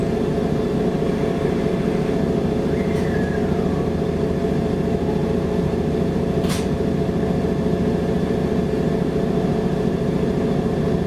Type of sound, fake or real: fake